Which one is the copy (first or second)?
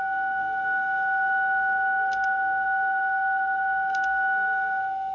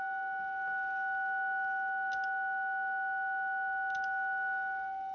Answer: first